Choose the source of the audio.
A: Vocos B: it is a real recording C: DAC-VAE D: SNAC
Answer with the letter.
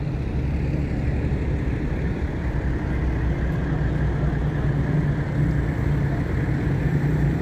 B